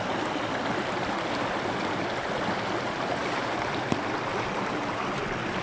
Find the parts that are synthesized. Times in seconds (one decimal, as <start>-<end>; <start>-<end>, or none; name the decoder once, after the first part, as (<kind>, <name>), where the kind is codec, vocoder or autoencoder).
none